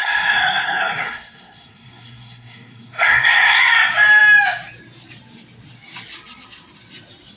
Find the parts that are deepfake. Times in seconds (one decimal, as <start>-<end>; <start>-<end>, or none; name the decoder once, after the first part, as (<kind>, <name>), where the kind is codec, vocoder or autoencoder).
0.0-3.6 (codec, SNAC)